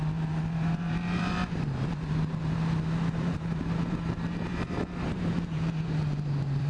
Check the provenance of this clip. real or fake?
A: fake